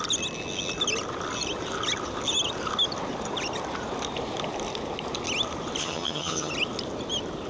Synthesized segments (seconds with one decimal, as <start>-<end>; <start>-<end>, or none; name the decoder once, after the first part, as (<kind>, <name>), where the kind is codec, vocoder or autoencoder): 5.8-6.5 (vocoder, HiFi-GAN)